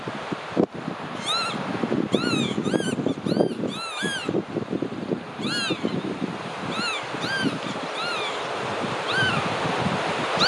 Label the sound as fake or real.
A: real